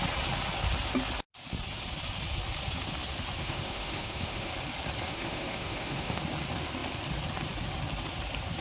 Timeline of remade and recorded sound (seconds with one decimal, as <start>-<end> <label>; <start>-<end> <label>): 0.0-3.4 recorded; 3.4-4.5 remade; 4.5-5.1 recorded; 5.1-6.2 remade; 6.2-8.6 recorded

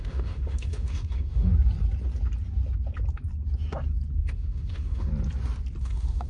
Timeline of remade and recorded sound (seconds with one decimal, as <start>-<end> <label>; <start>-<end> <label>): 0.0-1.5 remade; 1.5-4.2 recorded; 4.2-5.1 remade; 5.1-5.8 recorded; 5.8-6.3 remade